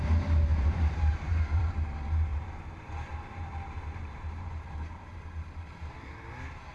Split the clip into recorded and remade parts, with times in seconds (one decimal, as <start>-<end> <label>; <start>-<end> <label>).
0.0-0.5 recorded; 0.5-1.9 remade; 1.9-2.3 recorded; 2.3-5.6 remade; 5.6-6.7 recorded